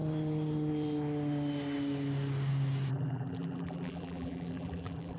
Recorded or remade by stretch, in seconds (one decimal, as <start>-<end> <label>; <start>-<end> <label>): 0.0-2.9 recorded; 2.9-5.2 remade